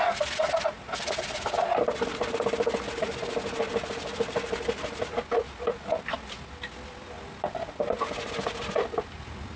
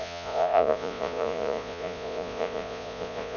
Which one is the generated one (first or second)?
second